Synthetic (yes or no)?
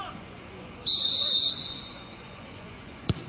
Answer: yes